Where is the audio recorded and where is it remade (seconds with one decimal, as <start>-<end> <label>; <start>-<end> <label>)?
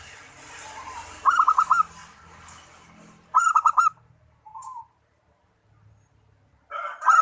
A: 0.0-2.0 recorded; 2.0-4.5 remade; 4.5-7.2 recorded